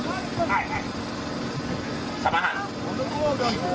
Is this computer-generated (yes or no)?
no